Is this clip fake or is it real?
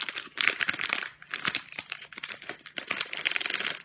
real